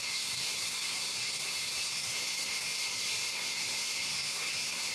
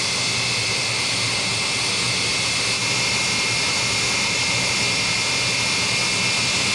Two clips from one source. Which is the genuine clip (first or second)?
second